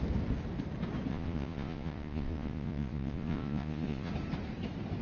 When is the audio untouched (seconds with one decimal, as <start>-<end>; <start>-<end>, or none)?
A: 0.0-1.1; 4.1-5.0